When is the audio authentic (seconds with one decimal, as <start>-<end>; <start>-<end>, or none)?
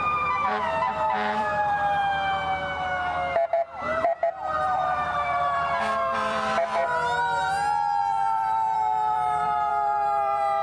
2.0-3.5; 6.8-8.0